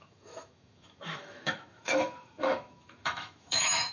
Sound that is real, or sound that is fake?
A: fake